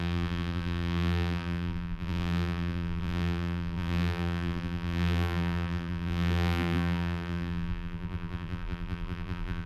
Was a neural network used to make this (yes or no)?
yes